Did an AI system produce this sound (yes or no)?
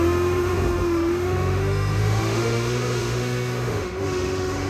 yes